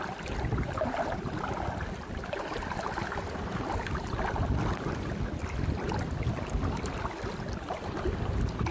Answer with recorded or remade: recorded